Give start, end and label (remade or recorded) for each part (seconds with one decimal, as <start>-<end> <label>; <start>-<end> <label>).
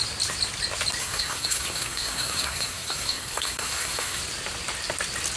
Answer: 0.0-1.0 recorded; 1.0-4.2 remade; 4.2-5.4 recorded